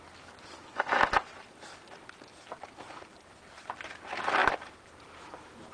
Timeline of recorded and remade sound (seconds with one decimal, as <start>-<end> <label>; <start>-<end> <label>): 0.0-5.7 recorded